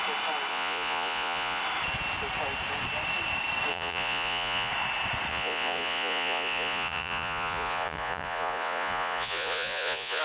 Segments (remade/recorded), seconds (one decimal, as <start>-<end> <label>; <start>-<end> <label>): 0.0-0.5 recorded; 0.5-1.6 remade; 1.6-3.7 recorded; 3.7-4.7 remade; 4.7-5.3 recorded; 5.3-10.2 remade